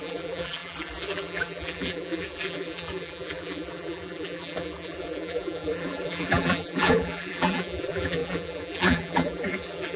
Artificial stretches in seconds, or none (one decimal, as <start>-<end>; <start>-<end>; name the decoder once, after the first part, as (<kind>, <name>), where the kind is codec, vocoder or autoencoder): 0.0-10.0 (vocoder, BigVGAN v2)